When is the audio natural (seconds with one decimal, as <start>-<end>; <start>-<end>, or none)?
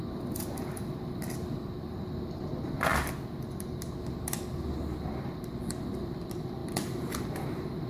0.0-7.9